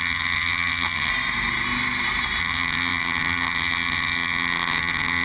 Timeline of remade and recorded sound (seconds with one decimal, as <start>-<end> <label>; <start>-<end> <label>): 0.0-1.1 remade; 1.1-2.4 recorded; 2.4-5.2 remade